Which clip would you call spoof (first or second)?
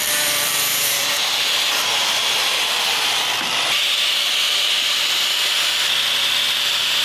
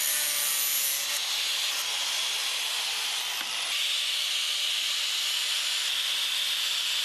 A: first